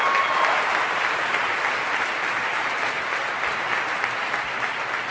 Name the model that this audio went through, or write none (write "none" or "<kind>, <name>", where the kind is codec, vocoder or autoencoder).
none